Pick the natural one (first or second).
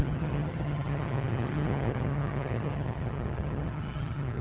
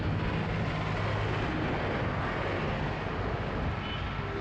second